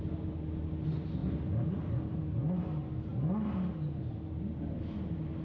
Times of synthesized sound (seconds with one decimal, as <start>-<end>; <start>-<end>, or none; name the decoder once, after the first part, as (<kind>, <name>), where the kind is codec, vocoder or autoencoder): none